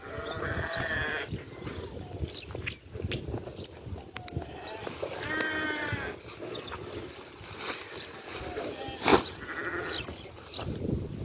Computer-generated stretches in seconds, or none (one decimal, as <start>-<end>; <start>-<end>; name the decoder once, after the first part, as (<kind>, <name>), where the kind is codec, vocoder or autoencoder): none

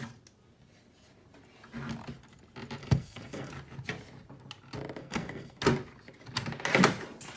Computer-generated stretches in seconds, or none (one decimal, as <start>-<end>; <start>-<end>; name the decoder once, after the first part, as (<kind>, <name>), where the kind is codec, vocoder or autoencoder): 2.8-3.5 (codec, SNAC); 5.0-5.6

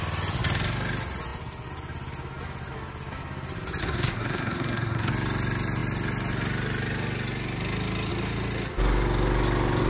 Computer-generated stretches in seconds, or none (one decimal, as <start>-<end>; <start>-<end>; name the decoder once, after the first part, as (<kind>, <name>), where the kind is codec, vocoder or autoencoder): 3.8-5.1 (codec, SNAC)

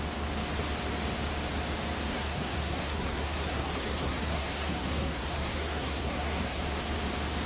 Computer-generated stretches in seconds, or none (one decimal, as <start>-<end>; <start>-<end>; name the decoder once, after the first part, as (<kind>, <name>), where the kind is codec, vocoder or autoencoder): 2.1-6.6 (codec, SNAC)